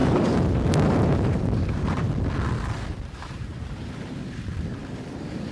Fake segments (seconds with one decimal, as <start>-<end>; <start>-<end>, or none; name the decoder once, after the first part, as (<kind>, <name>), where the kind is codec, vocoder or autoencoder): 0.0-2.1 (vocoder, BigVGAN v2); 2.9-3.6